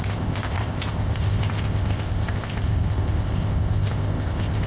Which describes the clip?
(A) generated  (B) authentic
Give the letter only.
A